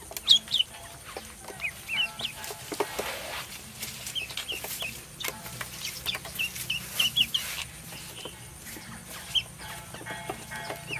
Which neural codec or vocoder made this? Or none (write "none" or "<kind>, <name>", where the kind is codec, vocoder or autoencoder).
none